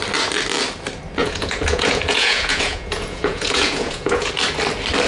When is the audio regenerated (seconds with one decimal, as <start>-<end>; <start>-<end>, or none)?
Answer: 1.2-4.3